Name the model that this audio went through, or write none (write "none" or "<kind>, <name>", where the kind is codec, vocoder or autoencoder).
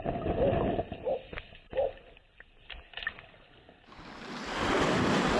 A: none